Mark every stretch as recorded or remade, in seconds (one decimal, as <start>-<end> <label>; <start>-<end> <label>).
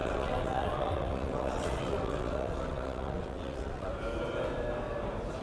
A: 0.0-3.9 remade; 3.9-5.4 recorded